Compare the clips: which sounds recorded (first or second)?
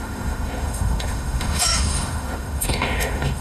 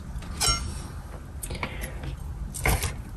second